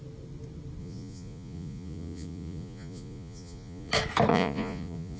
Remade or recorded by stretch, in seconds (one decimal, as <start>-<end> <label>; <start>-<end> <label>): 0.0-0.8 recorded; 0.8-3.9 remade; 3.9-4.3 recorded; 4.3-5.2 remade